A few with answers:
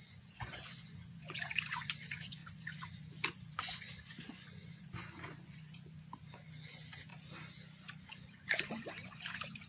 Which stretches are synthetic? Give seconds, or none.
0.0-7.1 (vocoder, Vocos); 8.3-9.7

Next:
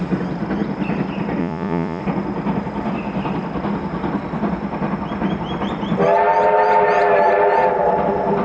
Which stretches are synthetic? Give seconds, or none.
1.4-2.0 (vocoder, Vocos)

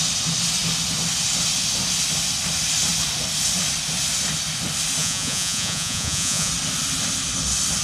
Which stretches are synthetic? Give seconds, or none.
5.0-6.5 (vocoder, Vocos)

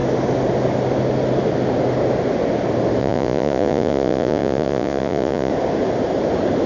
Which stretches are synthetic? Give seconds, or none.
3.0-5.5 (vocoder, Vocos)

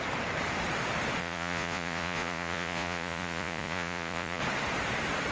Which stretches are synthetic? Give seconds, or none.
1.2-4.4 (vocoder, Vocos)

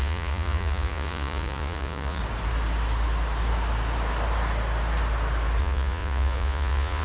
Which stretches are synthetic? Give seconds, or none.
0.0-2.2 (vocoder, Vocos); 5.6-7.0

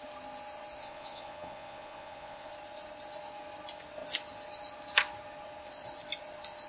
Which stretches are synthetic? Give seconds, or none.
0.8-2.5 (vocoder, Vocos)

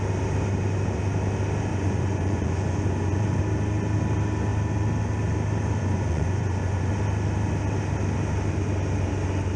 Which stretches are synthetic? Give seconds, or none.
1.7-3.4 (vocoder, Vocos); 5.8-6.9